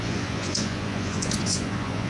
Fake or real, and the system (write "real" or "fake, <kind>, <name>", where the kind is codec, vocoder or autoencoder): fake, vocoder, Vocos